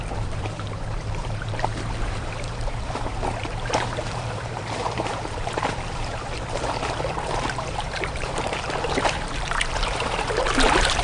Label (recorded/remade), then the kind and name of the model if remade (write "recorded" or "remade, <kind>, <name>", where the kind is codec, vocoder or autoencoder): remade, vocoder, BigVGAN v2